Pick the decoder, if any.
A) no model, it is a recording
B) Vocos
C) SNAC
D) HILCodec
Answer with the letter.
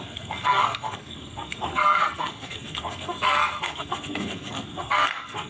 C